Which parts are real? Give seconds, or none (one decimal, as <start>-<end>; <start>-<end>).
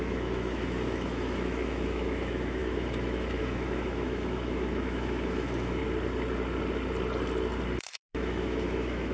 5.8-7.8